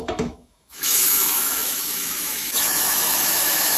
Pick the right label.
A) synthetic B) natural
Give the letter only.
A